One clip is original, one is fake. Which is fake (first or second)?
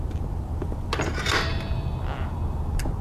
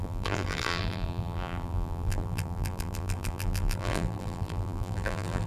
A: second